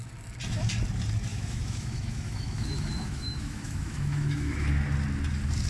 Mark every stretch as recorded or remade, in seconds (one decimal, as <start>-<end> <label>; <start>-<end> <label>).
0.0-1.3 recorded; 1.3-4.7 remade; 4.7-5.7 recorded